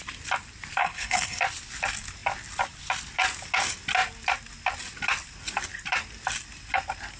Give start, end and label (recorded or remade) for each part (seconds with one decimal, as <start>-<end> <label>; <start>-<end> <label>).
0.0-0.8 recorded; 0.8-1.4 remade; 1.4-7.2 recorded